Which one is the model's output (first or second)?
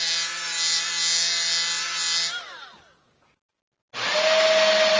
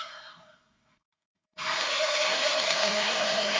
second